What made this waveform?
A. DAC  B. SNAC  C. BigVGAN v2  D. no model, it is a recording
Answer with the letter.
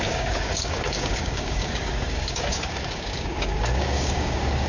A